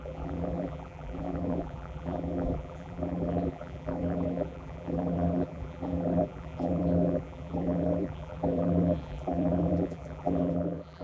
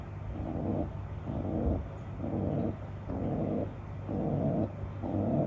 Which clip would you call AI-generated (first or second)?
first